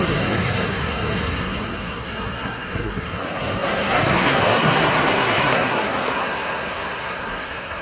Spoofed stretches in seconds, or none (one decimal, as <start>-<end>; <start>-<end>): 0.0-7.8